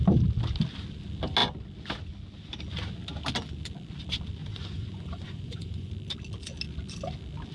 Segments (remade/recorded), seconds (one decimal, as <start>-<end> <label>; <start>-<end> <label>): 0.0-4.4 recorded; 4.4-5.9 remade; 5.9-7.5 recorded